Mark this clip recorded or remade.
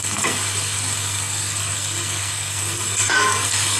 remade